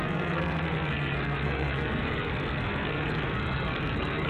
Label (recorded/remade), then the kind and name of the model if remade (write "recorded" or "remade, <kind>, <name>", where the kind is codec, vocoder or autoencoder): remade, codec, SNAC